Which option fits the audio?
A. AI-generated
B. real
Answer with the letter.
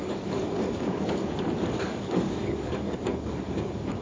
A